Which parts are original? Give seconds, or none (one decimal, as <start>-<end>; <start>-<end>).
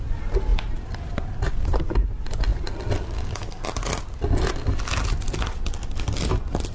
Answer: 0.0-6.7